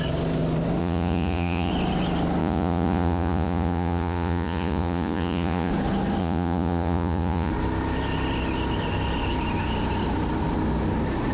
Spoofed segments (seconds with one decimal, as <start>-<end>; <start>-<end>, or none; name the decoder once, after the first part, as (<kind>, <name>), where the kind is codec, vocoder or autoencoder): 0.8-1.7 (vocoder, Vocos); 2.4-5.7; 6.2-7.5